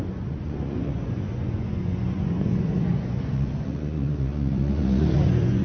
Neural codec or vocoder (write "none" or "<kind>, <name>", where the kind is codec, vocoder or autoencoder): vocoder, Vocos